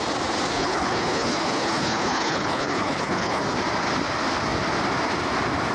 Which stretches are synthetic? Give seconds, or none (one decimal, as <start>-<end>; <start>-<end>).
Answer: 0.5-3.4